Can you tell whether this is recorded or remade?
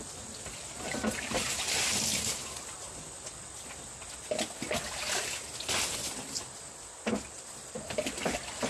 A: recorded